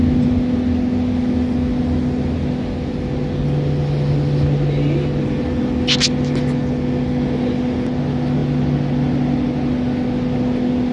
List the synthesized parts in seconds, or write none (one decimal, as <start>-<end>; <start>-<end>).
none